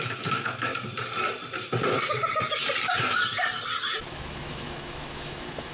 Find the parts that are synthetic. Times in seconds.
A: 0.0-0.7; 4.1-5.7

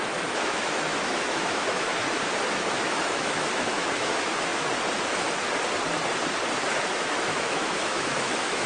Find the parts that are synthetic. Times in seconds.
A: 0.0-1.9; 2.5-4.5; 6.8-8.7

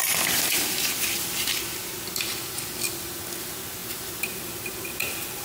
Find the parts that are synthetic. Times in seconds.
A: none